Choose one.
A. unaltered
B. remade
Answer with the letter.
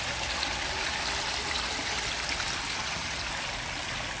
A